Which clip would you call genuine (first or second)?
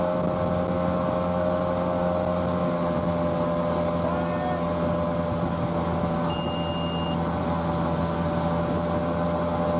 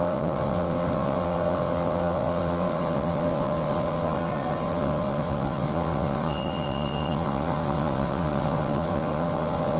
first